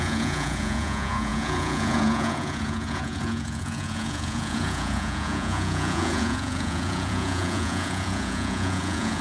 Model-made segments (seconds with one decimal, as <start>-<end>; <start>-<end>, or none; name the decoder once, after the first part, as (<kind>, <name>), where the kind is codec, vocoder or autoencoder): 0.0-9.2 (vocoder, Vocos)